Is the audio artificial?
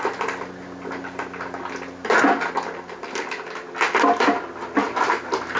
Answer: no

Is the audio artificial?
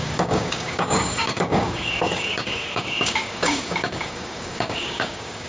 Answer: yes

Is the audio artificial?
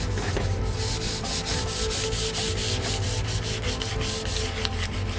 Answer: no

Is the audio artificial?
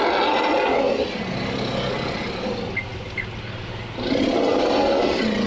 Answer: no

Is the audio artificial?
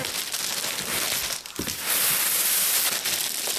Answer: no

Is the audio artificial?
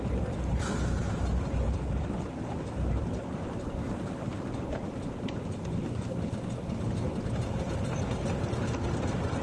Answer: no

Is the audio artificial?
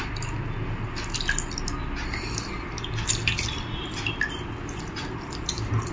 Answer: no